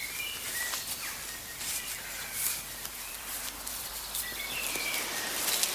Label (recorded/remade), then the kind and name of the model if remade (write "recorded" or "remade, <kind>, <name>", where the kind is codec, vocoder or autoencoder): remade, vocoder, BigVGAN v2